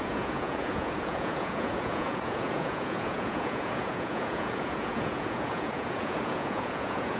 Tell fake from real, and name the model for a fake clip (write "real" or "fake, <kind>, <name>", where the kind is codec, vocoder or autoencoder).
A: fake, vocoder, Vocos